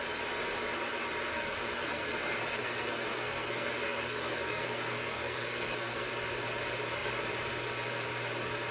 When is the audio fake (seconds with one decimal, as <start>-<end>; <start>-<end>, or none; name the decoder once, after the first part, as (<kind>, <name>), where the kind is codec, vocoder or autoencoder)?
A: 1.3-6.1 (codec, SNAC)

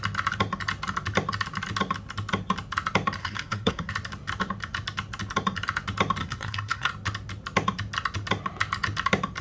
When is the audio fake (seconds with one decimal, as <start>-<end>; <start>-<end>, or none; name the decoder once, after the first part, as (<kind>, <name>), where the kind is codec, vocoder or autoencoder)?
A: 3.2-3.9 (codec, SNAC); 6.2-6.9

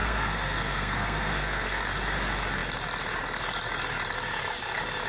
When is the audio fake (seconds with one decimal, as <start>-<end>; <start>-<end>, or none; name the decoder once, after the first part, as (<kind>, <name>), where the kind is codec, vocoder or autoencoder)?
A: 0.0-1.8 (codec, SNAC)

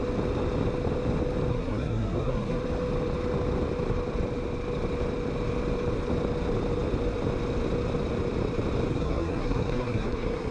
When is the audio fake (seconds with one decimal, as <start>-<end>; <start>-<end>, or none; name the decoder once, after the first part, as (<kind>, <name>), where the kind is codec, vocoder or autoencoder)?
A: 1.5-2.6 (codec, SNAC); 8.9-10.5

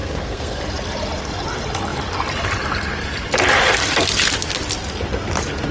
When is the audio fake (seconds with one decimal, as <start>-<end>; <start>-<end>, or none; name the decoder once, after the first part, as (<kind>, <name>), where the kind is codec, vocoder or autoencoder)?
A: 0.0-0.6 (codec, SNAC)

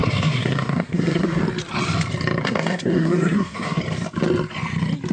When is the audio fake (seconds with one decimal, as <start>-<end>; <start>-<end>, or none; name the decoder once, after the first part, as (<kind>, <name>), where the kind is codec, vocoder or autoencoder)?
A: 0.0-1.4 (codec, SNAC); 2.4-3.8

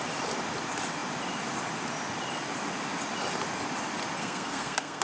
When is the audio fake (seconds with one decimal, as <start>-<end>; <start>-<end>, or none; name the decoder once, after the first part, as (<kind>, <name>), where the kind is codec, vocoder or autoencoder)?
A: 4.2-5.0 (codec, SNAC)